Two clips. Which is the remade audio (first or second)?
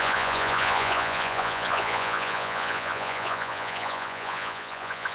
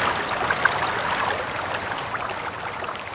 first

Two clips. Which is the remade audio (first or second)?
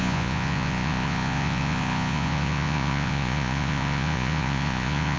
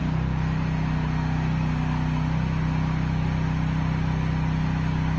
first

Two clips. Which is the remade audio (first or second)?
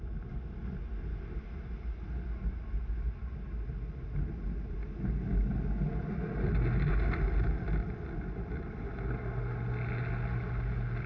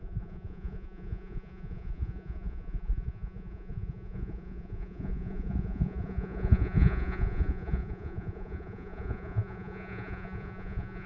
second